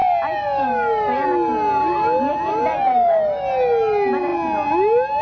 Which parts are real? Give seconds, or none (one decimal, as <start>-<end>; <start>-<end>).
0.0-5.2